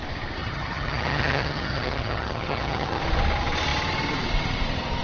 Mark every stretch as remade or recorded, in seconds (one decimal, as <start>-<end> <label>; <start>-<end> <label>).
0.0-0.4 recorded; 0.4-3.0 remade; 3.0-5.0 recorded